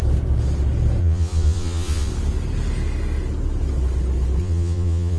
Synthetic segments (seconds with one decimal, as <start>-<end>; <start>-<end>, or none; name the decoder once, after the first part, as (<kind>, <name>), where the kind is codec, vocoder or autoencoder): 1.0-2.1 (vocoder, Vocos); 4.4-5.2